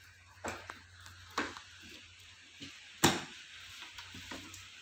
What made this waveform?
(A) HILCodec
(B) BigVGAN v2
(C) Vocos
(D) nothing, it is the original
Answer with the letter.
D